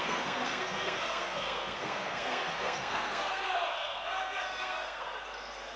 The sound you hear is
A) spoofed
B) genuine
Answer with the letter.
A